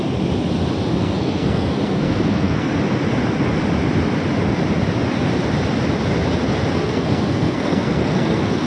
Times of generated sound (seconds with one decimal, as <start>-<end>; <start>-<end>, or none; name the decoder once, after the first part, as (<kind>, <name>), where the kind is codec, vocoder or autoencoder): 1.0-2.7 (codec, SNAC); 6.7-8.7